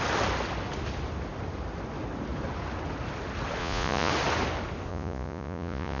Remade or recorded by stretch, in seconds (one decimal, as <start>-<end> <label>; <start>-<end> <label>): 0.0-3.6 recorded; 3.6-4.1 remade; 4.1-4.9 recorded; 4.9-6.0 remade